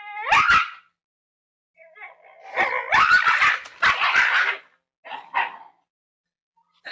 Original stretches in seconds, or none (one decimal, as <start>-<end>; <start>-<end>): 0.0-6.9